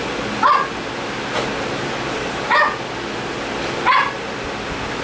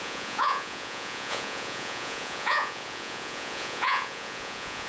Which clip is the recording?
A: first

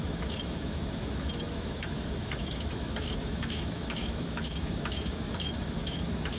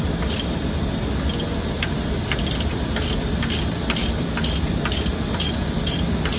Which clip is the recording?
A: second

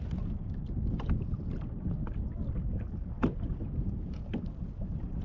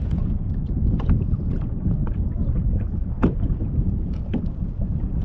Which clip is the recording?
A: first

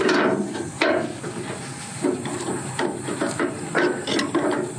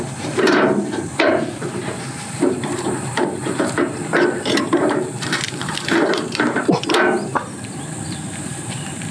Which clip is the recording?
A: first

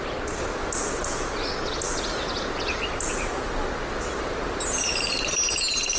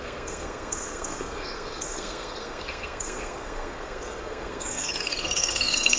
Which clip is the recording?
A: first